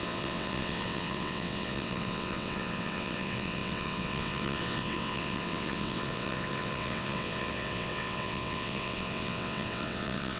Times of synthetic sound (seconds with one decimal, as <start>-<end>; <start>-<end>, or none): 0.0-10.4